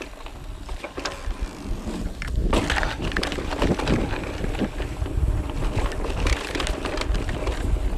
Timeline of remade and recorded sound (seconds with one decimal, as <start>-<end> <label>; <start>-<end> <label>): 0.0-8.0 recorded